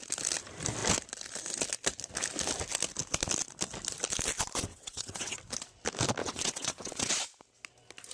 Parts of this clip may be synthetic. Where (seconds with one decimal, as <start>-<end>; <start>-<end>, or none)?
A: 4.7-5.4; 6.2-7.1